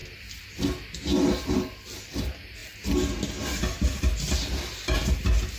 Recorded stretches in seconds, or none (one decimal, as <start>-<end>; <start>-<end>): 0.0-5.6